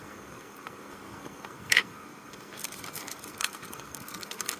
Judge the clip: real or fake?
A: fake